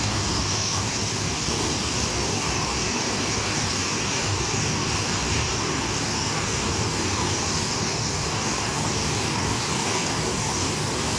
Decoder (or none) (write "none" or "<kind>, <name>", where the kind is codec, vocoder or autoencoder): codec, DAC